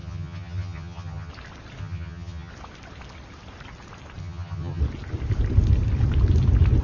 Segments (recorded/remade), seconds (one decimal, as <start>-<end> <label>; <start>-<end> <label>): 0.0-1.3 remade; 1.3-1.8 recorded; 1.8-2.5 remade; 2.5-4.2 recorded; 4.2-4.8 remade; 4.8-6.8 recorded